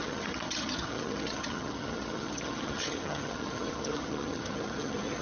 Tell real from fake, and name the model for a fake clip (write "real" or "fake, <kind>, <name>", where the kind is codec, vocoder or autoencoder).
fake, vocoder, HiFi-GAN